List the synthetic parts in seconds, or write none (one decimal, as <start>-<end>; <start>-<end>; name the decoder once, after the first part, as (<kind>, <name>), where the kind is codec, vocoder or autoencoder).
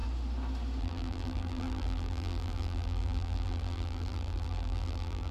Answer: 0.8-5.3 (vocoder, BigVGAN v2)